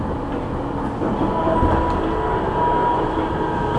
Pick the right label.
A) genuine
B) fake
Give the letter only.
A